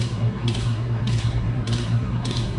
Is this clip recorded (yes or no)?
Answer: no